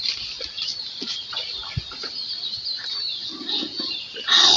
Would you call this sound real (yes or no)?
yes